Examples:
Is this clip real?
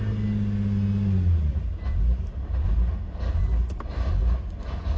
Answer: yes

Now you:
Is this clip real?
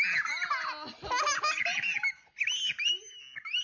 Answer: yes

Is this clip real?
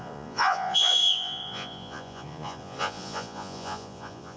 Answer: no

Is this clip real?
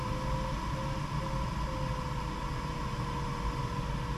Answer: yes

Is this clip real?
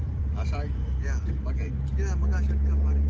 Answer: yes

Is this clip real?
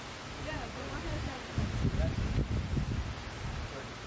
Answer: yes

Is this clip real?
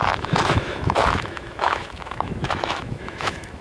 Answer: no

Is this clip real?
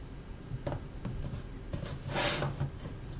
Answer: yes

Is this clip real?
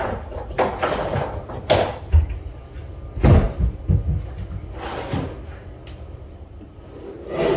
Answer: yes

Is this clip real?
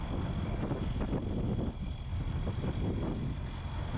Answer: yes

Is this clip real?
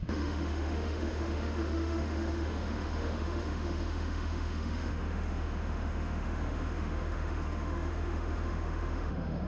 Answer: no